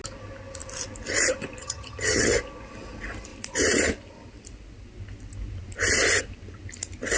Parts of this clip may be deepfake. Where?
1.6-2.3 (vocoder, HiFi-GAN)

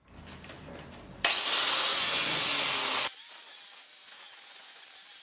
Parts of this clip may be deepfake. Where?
1.9-2.4 (vocoder, Vocos); 4.0-4.8

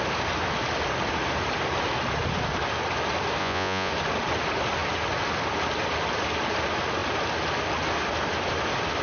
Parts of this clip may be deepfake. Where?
3.4-3.9 (vocoder, Vocos)

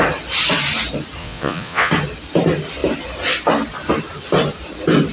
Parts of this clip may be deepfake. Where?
1.2-1.9 (vocoder, Vocos)

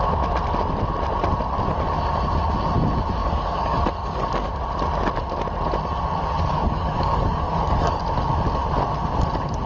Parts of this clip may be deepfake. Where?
3.2-4.6 (codec, DAC); 6.5-8.0